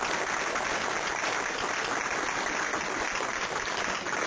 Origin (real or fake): real